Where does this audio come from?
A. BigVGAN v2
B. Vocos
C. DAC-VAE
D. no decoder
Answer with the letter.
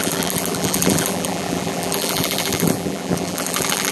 A